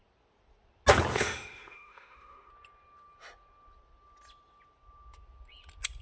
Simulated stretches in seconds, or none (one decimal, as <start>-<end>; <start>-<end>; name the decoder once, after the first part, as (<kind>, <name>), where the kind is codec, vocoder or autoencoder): 1.1-2.5 (autoencoder, DAC-VAE)